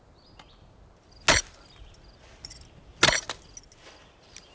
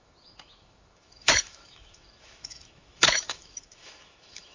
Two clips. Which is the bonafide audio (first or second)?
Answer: first